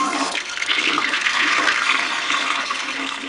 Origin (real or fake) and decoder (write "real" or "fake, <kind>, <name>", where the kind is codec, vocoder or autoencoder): fake, codec, SNAC